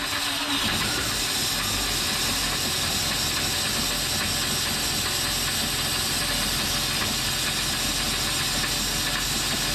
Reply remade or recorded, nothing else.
recorded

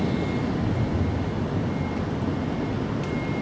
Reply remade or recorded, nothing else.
recorded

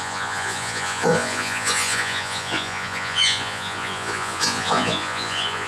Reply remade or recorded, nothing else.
remade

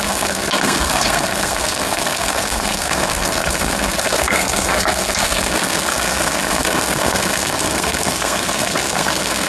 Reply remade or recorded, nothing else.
remade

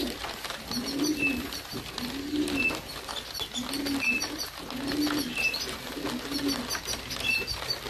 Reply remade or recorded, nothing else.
recorded